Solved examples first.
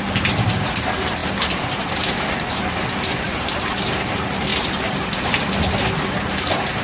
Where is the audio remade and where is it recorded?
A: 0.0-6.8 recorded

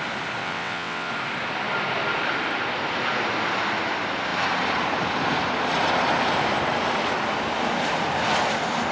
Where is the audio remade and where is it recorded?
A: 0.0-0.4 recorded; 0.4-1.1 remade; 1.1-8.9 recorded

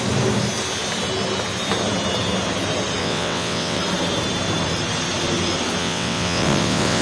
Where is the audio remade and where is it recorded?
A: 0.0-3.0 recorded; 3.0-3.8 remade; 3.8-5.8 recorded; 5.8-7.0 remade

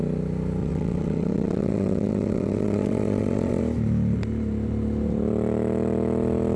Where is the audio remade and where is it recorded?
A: 0.0-0.6 recorded; 0.6-3.6 remade; 3.6-6.6 recorded